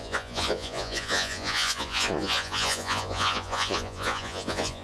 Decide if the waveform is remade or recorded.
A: remade